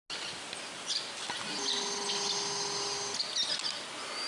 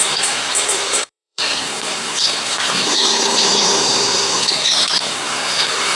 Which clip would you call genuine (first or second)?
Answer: first